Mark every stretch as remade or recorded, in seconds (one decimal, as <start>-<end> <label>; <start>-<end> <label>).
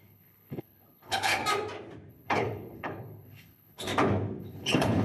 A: 0.0-1.4 remade; 1.4-2.1 recorded; 2.1-3.9 remade; 3.9-4.4 recorded; 4.4-5.0 remade